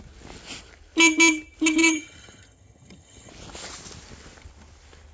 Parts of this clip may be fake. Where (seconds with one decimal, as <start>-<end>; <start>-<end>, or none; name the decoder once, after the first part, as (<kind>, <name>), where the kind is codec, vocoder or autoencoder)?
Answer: 1.8-3.3 (vocoder, HiFi-GAN)